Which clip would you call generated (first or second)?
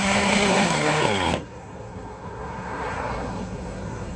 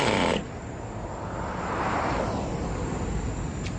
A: first